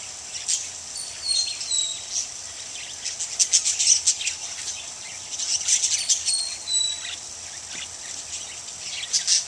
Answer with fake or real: real